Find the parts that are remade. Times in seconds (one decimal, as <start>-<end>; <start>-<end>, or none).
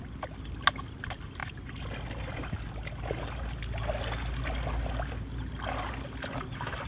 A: none